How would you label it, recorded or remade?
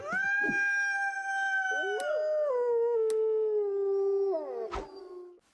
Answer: recorded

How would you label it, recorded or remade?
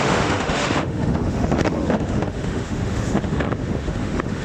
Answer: remade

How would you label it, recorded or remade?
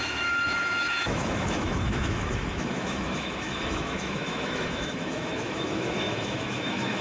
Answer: remade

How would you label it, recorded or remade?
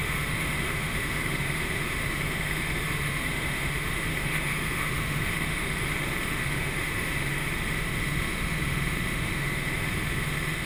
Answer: remade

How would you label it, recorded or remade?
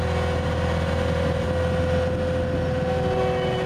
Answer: recorded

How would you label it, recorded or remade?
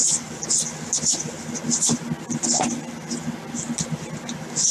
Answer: recorded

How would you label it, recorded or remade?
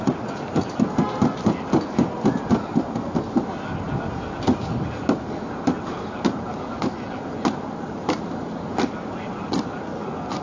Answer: recorded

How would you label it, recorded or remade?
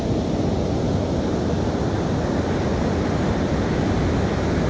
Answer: recorded